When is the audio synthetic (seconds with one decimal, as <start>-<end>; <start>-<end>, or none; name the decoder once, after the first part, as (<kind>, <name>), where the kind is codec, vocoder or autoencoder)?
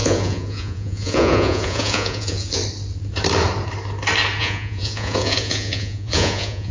0.0-2.6 (vocoder, Vocos); 4.4-6.7